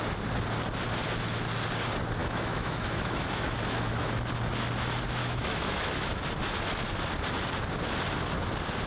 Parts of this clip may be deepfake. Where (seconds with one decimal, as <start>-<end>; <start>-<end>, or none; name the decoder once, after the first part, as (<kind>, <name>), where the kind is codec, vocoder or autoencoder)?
2.2-4.3 (autoencoder, DAC-VAE); 5.2-6.1